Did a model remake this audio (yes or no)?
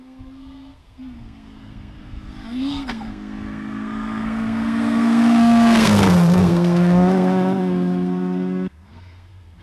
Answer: yes